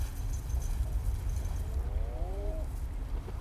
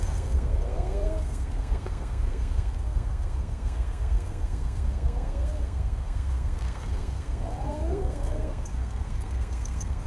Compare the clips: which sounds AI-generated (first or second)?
second